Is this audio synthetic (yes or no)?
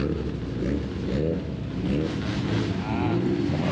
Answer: no